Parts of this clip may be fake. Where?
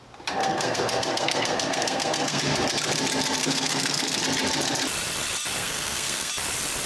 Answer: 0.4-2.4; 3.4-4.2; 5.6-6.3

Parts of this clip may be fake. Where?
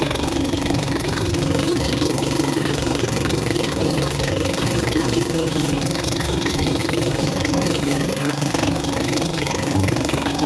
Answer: 0.0-10.5